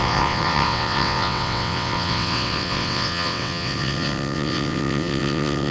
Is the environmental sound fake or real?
fake